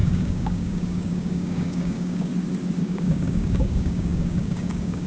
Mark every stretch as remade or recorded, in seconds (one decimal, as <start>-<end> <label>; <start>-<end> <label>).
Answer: 0.0-2.3 remade; 2.3-2.8 recorded; 2.8-5.1 remade